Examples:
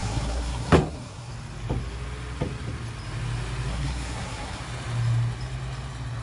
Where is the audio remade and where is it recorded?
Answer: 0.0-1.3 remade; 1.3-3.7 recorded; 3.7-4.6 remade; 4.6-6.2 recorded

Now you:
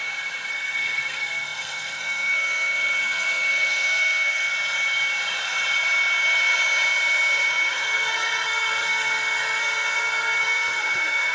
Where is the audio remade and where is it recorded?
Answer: 0.0-0.5 recorded; 0.5-4.5 remade; 4.5-7.7 recorded; 7.7-11.3 remade

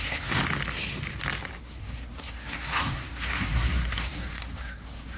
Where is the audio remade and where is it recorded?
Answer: 0.0-0.4 remade; 0.4-1.6 recorded; 1.6-5.2 remade

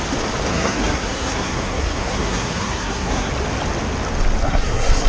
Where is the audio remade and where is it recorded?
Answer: 0.0-0.5 recorded; 0.5-3.3 remade; 3.3-4.4 recorded; 4.4-5.1 remade

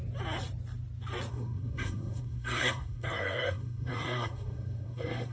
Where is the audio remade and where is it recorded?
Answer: 0.0-1.3 recorded; 1.3-5.3 remade